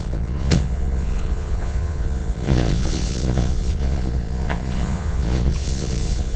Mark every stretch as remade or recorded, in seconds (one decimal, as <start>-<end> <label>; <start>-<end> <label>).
0.0-6.4 remade